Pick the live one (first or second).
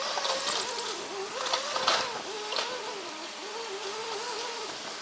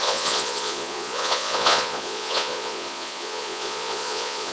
first